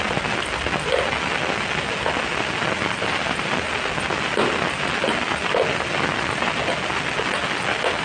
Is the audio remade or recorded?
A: recorded